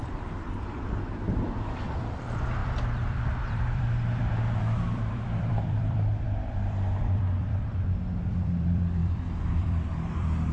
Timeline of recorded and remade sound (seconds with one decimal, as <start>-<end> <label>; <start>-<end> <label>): 0.0-10.5 remade